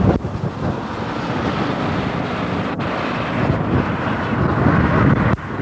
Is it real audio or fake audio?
real